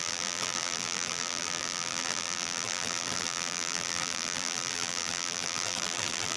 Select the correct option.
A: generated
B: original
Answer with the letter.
A